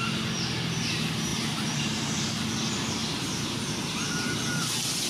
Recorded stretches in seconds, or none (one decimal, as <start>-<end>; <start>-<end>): 0.0-1.3; 2.0-3.0; 4.4-5.1